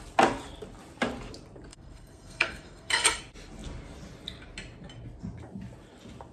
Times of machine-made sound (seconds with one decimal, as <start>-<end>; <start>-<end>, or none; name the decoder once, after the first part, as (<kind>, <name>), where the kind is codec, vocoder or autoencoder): 1.7-3.2 (codec, SNAC)